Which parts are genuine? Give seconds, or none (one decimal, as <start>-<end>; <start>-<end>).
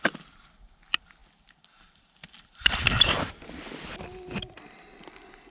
0.0-1.2; 3.3-5.5